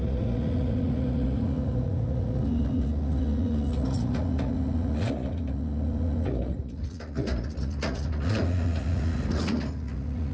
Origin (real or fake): fake